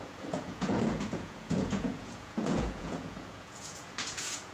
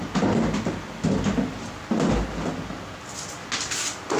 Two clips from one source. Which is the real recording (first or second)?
second